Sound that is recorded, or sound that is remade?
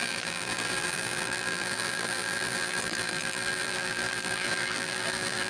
remade